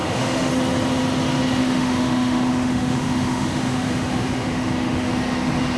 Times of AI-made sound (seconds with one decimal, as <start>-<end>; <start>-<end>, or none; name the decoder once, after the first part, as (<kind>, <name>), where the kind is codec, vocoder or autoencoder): 0.0-0.5 (autoencoder, DAC-VAE); 1.6-5.1